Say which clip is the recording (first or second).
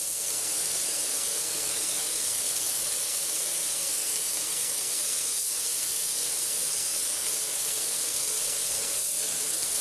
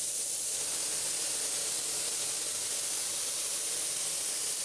second